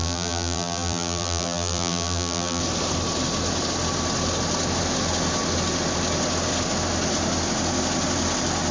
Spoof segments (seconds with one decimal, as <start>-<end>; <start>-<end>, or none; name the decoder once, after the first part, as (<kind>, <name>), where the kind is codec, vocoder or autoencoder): 0.0-2.6 (vocoder, BigVGAN v2)